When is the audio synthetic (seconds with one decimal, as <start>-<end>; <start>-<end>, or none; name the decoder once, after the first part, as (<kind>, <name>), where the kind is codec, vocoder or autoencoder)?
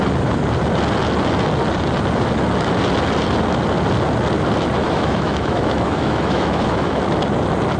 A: 4.8-7.0 (autoencoder, DAC-VAE)